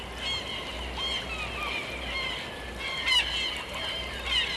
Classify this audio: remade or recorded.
recorded